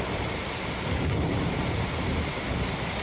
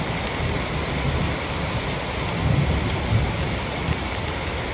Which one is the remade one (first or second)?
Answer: first